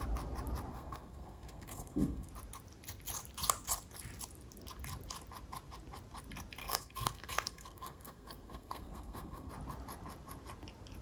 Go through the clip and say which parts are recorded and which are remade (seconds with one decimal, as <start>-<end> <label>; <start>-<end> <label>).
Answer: 0.0-0.7 recorded; 0.7-2.3 remade; 2.3-6.6 recorded; 6.6-9.5 remade; 9.5-11.0 recorded